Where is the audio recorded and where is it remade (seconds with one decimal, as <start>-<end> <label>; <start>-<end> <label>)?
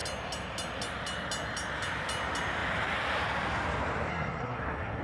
0.0-4.1 recorded; 4.1-5.0 remade